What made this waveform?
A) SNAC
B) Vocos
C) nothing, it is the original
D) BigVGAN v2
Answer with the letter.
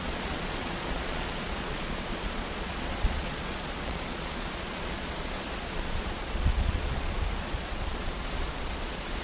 B